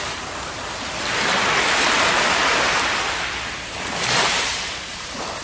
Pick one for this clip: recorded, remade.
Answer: recorded